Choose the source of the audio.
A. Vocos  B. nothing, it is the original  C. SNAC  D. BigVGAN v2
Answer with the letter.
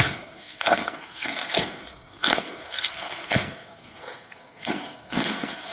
C